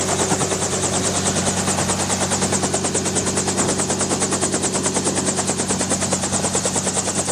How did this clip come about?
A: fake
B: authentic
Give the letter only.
B